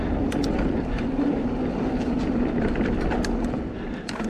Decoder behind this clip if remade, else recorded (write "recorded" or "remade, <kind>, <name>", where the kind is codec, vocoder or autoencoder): recorded